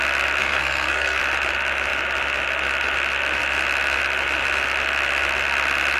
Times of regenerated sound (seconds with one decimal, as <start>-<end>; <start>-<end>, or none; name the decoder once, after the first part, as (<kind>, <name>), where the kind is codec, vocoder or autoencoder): 0.4-1.2 (codec, SNAC)